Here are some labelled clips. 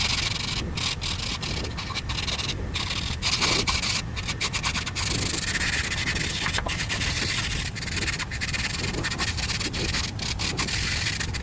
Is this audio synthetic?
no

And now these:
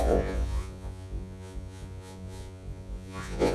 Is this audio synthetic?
yes